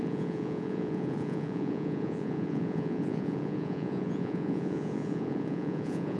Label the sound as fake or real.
fake